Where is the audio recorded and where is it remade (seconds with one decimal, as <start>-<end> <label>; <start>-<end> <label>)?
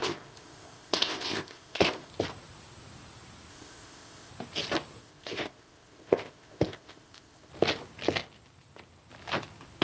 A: 0.0-2.1 remade; 2.1-3.5 recorded; 3.5-4.3 remade; 4.3-5.0 recorded; 5.0-7.5 remade; 7.5-9.8 recorded